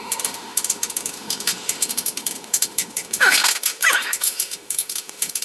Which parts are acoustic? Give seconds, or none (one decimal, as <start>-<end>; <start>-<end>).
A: none